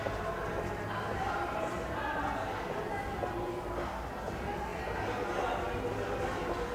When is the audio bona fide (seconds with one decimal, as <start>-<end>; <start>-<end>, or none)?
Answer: 0.0-6.7